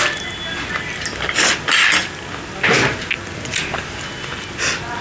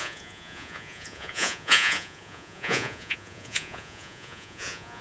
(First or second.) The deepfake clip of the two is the second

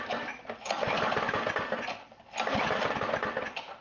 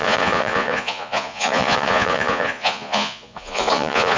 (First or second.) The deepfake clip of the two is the second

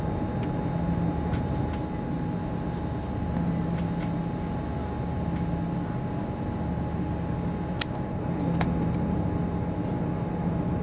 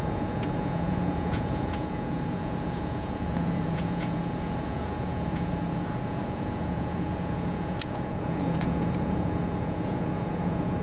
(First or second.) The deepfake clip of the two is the second